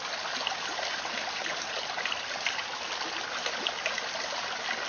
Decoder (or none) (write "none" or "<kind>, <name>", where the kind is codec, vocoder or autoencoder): none